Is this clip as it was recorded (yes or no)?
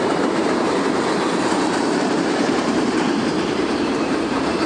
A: no